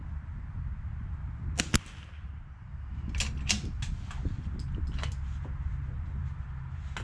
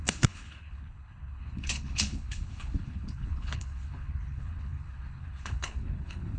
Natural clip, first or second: first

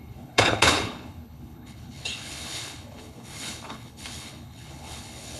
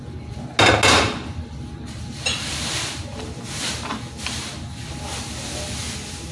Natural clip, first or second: second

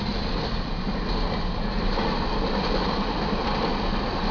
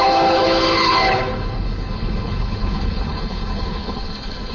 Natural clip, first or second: first